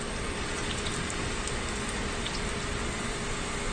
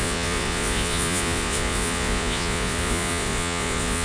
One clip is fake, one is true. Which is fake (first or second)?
second